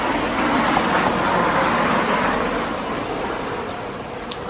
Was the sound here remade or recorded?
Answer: recorded